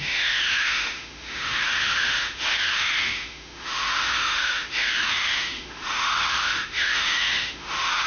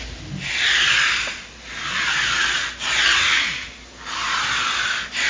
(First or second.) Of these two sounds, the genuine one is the second